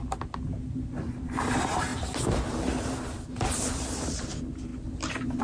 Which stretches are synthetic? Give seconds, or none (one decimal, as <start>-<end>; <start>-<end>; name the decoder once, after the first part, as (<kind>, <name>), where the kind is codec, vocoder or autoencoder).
none